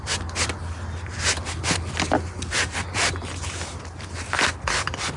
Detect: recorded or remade recorded